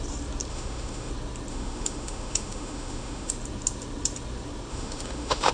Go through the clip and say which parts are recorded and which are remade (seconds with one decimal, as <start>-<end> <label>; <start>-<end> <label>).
0.0-0.5 recorded; 0.5-1.1 remade; 1.1-1.5 recorded; 1.5-3.3 remade; 3.3-4.7 recorded; 4.7-5.5 remade